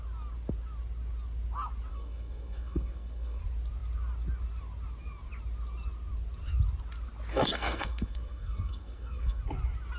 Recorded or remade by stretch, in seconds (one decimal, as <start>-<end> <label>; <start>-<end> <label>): 0.0-1.9 recorded; 1.9-3.4 remade; 3.4-7.3 recorded; 7.3-9.4 remade; 9.4-10.0 recorded